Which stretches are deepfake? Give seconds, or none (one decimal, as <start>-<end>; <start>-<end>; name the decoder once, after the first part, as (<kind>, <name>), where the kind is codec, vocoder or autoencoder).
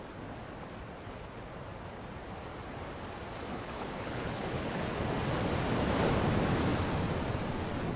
3.5-5.0 (codec, HILCodec)